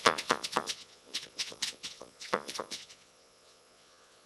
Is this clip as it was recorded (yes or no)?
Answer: no